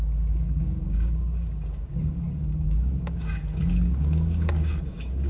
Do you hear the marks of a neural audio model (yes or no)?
yes